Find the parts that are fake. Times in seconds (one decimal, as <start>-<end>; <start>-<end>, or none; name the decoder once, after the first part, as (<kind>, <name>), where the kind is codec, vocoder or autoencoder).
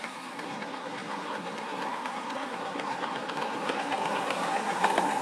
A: 0.0-5.2 (codec, SNAC)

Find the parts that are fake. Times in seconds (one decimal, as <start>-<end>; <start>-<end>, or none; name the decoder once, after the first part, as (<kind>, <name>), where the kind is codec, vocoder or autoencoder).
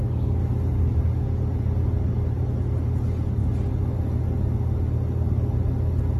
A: none